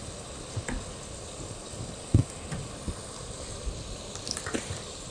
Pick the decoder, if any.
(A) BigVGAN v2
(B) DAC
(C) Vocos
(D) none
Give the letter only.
D